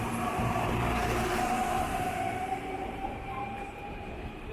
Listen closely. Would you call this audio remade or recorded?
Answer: remade